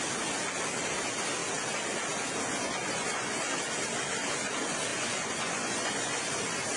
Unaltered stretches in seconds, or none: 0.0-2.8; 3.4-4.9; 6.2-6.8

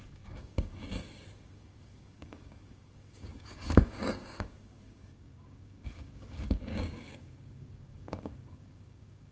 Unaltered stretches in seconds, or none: none

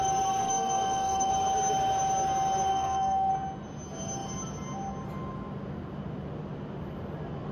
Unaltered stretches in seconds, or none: 0.0-0.4; 1.3-2.7; 3.3-7.5

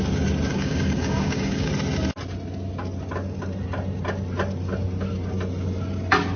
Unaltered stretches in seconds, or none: 0.0-0.5; 1.7-6.4

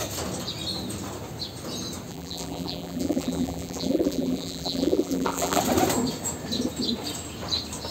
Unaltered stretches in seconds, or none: 0.0-2.1; 5.6-7.9

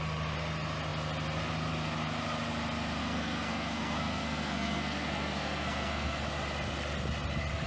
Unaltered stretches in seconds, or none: 0.0-3.0; 6.2-7.7

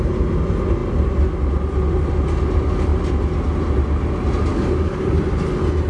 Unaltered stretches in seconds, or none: 0.0-4.5; 5.2-5.9

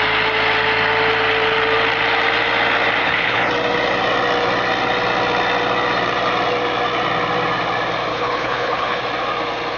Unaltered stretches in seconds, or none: 0.0-3.0; 3.5-8.1; 9.0-9.8